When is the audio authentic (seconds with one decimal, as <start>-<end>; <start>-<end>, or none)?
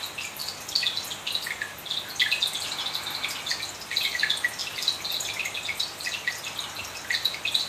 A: 0.0-7.7